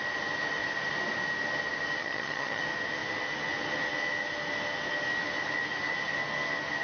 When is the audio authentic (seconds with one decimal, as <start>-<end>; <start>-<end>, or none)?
0.0-2.0; 2.6-6.8